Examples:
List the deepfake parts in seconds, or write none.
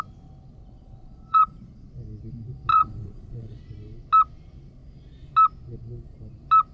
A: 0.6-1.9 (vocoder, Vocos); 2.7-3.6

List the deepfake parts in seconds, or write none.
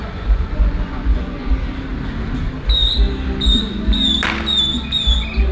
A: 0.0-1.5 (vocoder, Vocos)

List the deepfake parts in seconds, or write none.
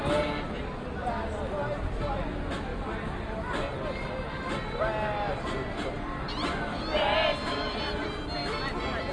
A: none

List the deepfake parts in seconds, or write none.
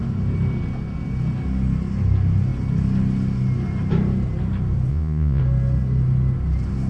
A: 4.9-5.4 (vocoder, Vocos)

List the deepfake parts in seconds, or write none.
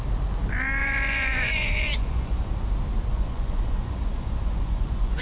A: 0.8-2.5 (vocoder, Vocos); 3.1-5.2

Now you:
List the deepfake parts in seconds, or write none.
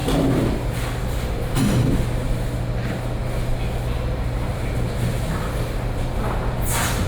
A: none